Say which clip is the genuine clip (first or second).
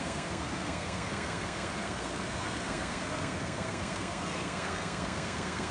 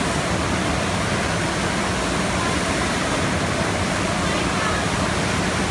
second